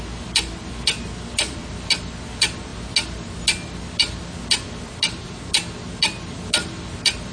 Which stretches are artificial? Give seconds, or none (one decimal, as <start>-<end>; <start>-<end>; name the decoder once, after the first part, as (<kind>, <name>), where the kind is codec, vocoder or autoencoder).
none

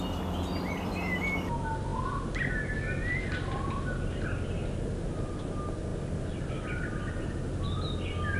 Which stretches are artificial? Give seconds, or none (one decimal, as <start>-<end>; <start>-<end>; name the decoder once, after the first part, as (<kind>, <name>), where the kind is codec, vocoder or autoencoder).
none

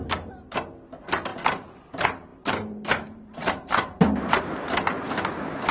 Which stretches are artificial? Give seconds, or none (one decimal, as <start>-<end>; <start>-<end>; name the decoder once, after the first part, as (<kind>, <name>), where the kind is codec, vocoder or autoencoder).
2.3-4.4 (vocoder, BigVGAN v2)